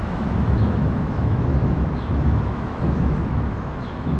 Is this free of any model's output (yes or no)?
no